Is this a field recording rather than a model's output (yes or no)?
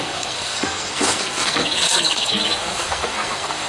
no